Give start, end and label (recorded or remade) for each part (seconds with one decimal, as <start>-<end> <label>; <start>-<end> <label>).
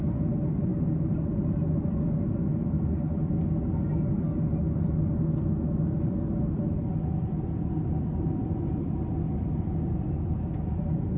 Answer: 0.0-11.2 recorded